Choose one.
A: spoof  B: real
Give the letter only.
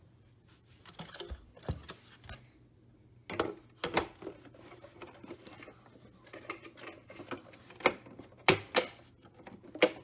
B